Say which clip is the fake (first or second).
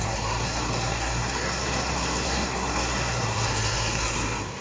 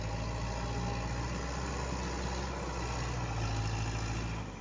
first